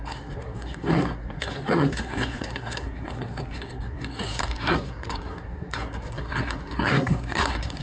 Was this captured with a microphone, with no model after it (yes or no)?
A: no